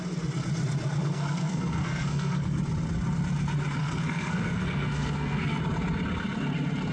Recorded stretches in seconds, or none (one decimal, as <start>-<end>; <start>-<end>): 0.0-1.0; 2.6-3.8; 5.6-6.9